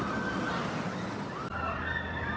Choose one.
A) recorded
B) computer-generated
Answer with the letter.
A